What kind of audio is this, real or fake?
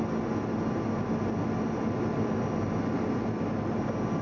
real